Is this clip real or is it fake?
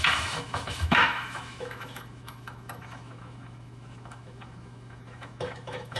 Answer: fake